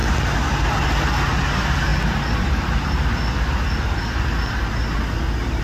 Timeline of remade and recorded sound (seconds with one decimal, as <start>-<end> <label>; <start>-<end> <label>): 0.0-5.6 recorded